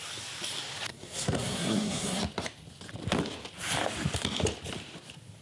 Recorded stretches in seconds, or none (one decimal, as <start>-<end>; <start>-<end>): 0.0-0.9; 2.2-5.4